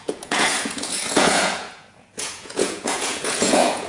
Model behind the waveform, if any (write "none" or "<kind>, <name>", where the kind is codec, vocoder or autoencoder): vocoder, Vocos